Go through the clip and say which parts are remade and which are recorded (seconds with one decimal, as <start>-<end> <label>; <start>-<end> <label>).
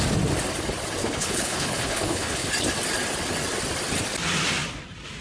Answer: 0.0-1.0 recorded; 1.0-2.5 remade; 2.5-5.2 recorded